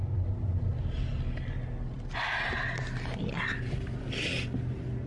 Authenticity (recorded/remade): recorded